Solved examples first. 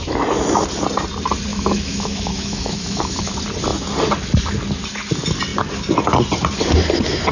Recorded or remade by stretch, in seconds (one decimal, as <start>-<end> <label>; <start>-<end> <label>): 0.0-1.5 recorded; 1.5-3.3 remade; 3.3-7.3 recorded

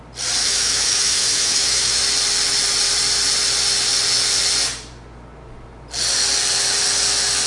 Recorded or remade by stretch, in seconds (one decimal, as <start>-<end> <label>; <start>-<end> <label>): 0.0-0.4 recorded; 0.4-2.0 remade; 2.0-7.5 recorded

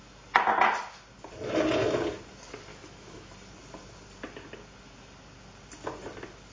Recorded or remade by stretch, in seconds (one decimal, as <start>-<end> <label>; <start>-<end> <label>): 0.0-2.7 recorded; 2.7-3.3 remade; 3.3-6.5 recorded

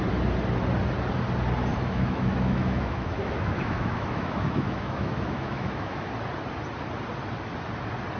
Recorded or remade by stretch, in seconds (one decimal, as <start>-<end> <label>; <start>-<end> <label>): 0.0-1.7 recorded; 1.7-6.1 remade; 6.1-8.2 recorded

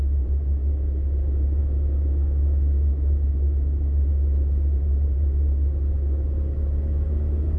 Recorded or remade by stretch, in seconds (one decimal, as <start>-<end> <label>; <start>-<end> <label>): 0.0-1.6 recorded; 1.6-3.3 remade; 3.3-7.6 recorded